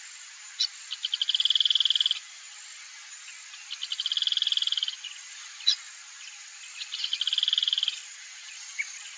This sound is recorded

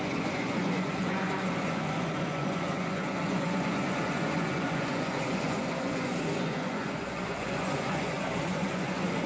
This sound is remade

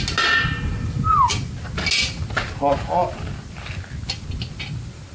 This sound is recorded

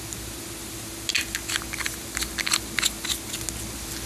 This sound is recorded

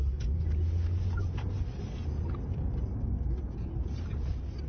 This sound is recorded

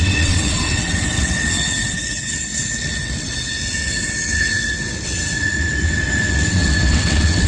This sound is remade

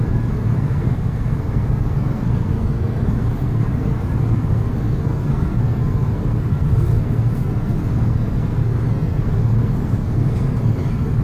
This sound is remade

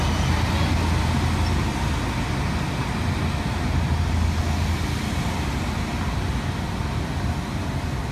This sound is recorded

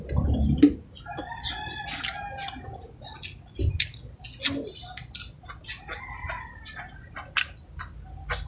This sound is recorded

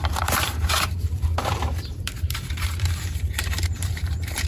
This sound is remade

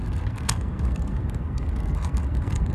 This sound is remade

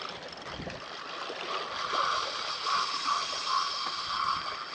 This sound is recorded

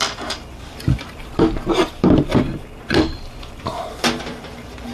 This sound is remade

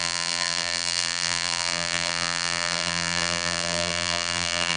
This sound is remade